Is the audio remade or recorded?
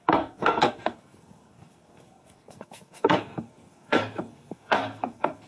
remade